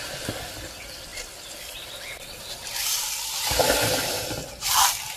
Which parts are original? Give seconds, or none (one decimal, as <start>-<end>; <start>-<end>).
0.0-5.2